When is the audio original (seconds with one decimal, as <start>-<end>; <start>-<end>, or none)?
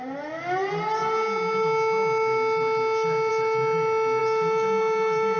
0.0-4.2